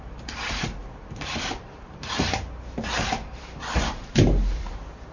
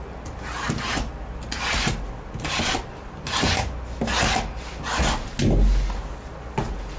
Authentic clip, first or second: second